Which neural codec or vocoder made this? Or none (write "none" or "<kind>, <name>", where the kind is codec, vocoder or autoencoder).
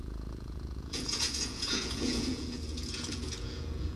vocoder, Vocos